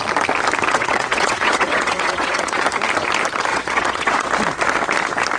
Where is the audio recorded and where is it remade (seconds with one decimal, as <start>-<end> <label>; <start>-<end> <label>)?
0.0-0.7 recorded; 0.7-2.6 remade; 2.6-3.5 recorded; 3.5-4.3 remade; 4.3-5.4 recorded